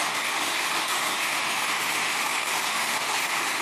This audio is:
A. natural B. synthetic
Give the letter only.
B